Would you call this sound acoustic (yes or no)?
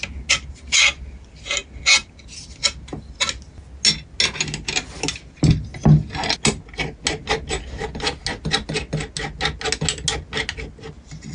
yes